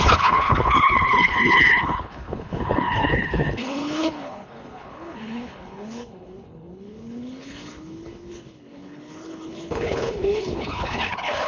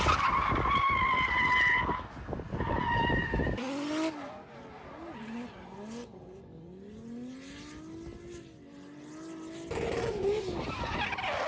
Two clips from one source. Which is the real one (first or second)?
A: second